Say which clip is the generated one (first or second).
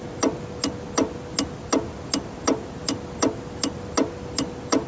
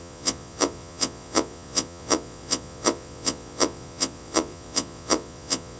second